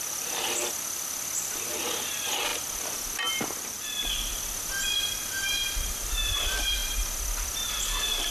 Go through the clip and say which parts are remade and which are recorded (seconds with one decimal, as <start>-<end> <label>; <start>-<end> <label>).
0.0-8.3 recorded